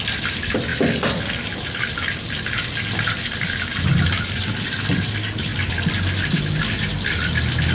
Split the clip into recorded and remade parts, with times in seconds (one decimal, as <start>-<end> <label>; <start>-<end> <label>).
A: 0.0-7.7 recorded